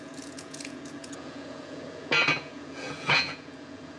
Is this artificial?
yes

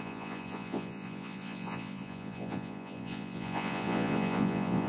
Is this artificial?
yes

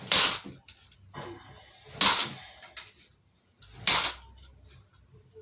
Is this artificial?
no